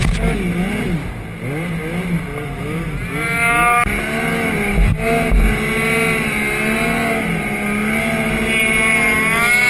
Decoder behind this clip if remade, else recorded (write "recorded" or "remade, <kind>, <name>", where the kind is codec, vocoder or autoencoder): recorded